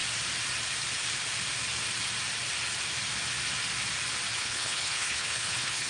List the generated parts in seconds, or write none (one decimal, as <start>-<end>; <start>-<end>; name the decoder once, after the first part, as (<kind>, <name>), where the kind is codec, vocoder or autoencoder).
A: 4.4-5.9 (codec, HILCodec)